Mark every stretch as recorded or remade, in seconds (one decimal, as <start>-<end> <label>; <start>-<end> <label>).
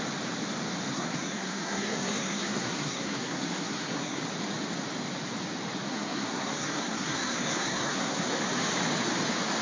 0.0-0.9 recorded; 0.9-4.2 remade; 4.2-5.9 recorded; 5.9-8.4 remade; 8.4-9.6 recorded